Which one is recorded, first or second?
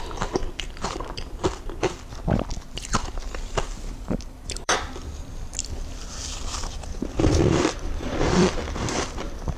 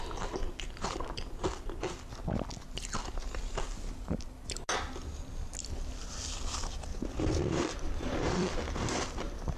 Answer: second